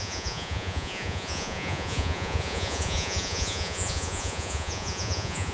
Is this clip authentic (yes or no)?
no